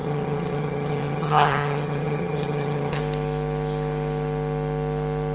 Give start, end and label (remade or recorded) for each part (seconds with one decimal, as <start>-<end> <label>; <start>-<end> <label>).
0.0-3.0 remade; 3.0-5.3 recorded